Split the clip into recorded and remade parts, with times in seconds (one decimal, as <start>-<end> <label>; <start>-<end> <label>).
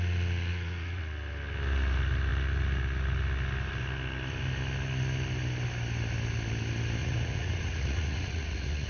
0.0-0.5 recorded; 0.5-1.0 remade; 1.0-7.0 recorded; 7.0-8.9 remade